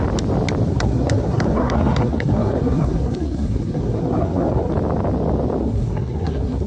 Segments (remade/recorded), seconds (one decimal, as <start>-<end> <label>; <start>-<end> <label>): 0.0-0.7 recorded; 0.7-4.7 remade; 4.7-5.6 recorded; 5.6-6.7 remade